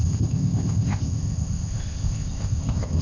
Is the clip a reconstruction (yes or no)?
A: yes